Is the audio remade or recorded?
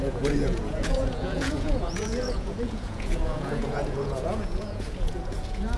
remade